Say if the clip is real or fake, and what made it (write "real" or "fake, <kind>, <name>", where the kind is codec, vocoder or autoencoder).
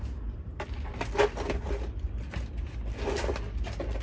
real